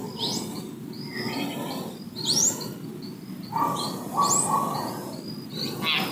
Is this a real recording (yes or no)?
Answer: yes